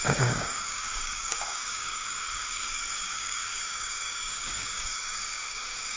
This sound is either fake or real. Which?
fake